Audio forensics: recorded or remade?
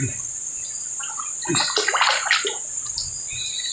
recorded